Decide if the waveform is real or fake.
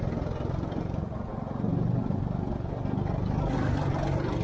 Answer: real